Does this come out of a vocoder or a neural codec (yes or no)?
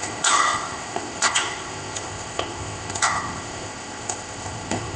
yes